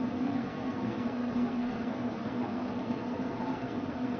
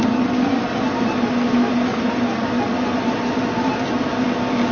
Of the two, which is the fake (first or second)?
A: first